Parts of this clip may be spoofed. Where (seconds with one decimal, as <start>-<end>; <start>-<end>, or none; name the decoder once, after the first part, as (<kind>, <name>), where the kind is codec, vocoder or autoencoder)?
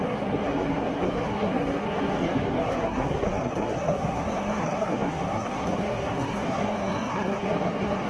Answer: 0.0-8.1 (codec, SNAC)